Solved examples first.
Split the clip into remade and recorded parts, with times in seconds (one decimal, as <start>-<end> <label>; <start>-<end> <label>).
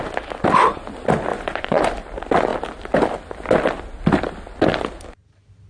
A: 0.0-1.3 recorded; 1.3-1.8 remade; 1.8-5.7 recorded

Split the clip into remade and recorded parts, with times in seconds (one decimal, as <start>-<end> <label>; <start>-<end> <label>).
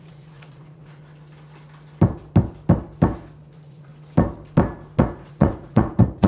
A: 0.0-1.0 remade; 1.0-3.5 recorded; 3.5-3.9 remade; 3.9-5.0 recorded; 5.0-6.3 remade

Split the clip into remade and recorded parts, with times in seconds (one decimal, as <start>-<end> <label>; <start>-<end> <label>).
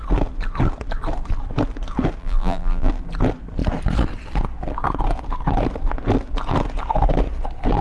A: 0.0-2.2 recorded; 2.2-2.9 remade; 2.9-7.8 recorded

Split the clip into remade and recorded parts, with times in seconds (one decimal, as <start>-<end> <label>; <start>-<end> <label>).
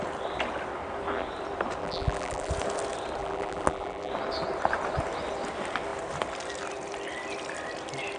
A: 0.0-1.8 recorded; 1.8-2.5 remade; 2.5-3.2 recorded; 3.2-4.1 remade; 4.1-8.2 recorded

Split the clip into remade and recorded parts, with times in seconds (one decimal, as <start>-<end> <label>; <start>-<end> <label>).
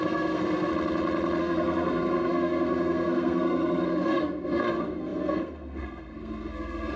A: 0.0-0.7 remade; 0.7-1.4 recorded; 1.4-7.0 remade